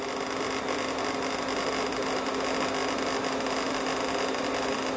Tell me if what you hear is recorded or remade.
recorded